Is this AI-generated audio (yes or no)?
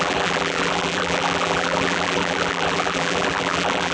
yes